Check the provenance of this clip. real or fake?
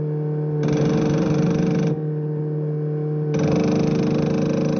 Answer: real